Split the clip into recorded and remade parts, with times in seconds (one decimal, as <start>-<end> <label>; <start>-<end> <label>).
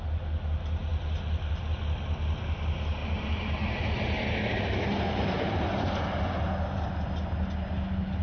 0.0-3.0 recorded; 3.0-5.5 remade; 5.5-8.2 recorded